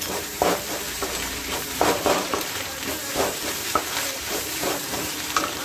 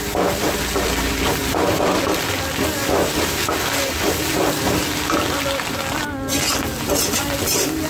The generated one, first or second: first